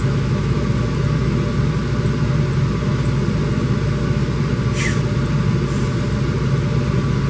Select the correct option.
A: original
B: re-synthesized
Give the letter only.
A